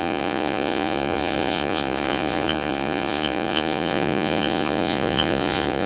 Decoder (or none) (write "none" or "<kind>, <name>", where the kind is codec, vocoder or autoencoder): vocoder, Vocos